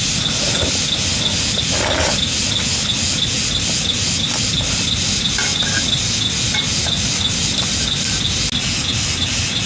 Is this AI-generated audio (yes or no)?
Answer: no